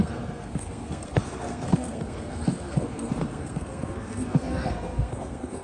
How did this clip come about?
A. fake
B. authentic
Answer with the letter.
A